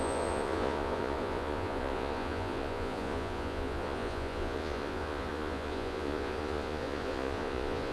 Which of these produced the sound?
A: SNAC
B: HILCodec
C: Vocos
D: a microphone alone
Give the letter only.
C